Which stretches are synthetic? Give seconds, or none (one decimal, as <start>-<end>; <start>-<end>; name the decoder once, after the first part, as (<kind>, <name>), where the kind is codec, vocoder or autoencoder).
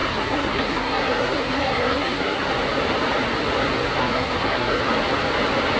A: 0.0-2.5 (codec, SNAC); 4.0-4.8